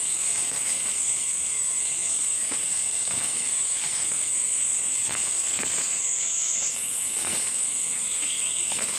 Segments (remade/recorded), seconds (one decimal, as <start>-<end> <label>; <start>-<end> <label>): 0.0-9.0 remade